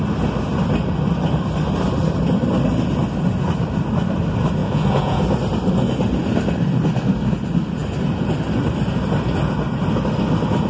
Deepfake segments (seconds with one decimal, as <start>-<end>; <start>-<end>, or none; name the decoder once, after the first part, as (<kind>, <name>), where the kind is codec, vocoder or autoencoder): 4.6-5.2 (vocoder, Vocos)